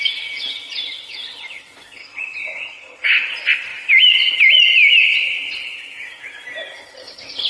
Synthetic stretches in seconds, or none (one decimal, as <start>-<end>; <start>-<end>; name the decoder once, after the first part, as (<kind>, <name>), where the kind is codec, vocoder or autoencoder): 2.0-3.3 (vocoder, Vocos)